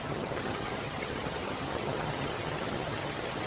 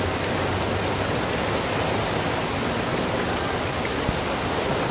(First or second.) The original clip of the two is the second